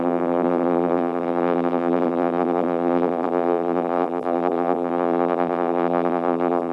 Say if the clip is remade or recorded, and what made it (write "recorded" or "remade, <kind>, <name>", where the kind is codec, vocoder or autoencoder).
remade, vocoder, BigVGAN v2